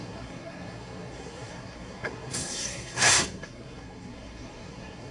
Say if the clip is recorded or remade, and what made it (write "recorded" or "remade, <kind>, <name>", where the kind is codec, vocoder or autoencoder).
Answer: remade, codec, SNAC